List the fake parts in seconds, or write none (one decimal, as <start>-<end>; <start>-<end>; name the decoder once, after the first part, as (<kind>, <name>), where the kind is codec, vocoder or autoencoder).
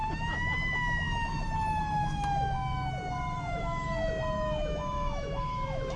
0.0-6.0 (autoencoder, DAC-VAE)